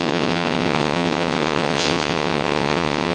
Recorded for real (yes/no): no